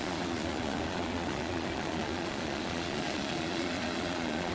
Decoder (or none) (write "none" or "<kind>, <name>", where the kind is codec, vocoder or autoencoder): vocoder, Vocos